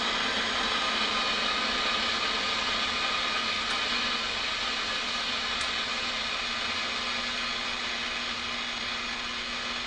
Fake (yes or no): no